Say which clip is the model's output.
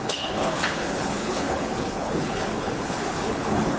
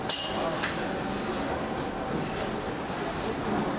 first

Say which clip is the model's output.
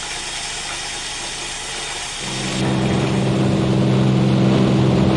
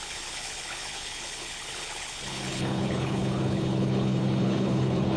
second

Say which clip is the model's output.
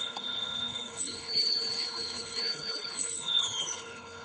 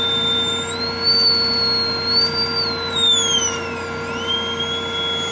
first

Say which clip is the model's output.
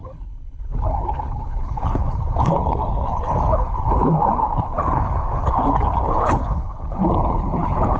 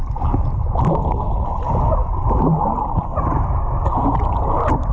first